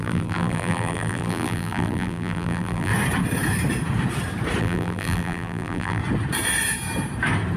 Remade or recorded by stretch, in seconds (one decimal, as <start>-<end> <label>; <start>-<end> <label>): 0.0-2.9 remade; 2.9-4.6 recorded; 4.6-6.0 remade; 6.0-7.6 recorded